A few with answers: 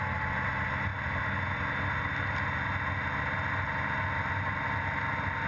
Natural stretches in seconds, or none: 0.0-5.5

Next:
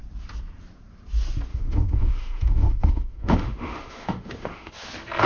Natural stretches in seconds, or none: 0.0-1.5; 4.7-5.3

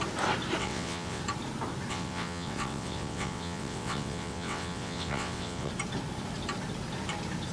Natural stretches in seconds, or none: 0.0-0.6; 1.2-1.9; 5.7-7.5

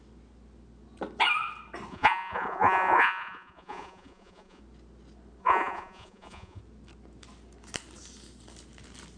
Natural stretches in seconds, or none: 0.0-1.9; 4.6-5.4; 6.6-9.2

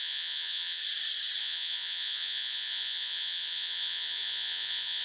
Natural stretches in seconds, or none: 0.8-1.4

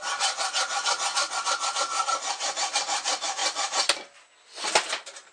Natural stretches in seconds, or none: 0.0-5.3

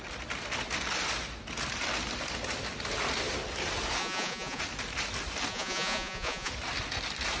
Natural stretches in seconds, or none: 0.0-4.0; 4.6-5.5; 6.5-7.4

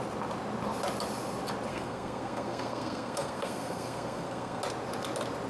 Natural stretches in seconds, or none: 0.0-1.7; 4.6-5.5